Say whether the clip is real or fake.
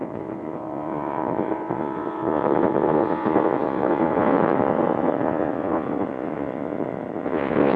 fake